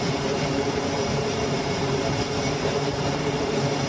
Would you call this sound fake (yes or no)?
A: yes